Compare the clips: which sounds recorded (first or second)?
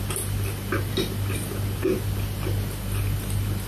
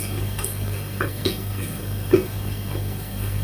first